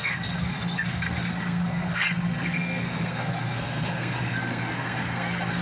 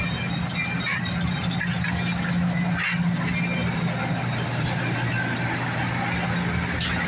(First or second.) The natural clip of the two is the second